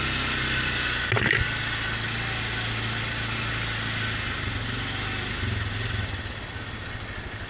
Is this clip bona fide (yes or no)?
yes